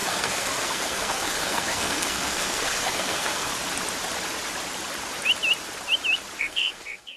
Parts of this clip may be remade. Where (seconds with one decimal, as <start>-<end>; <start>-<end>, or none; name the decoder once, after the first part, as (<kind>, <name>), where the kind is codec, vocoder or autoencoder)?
0.0-3.5 (codec, SNAC); 6.4-7.2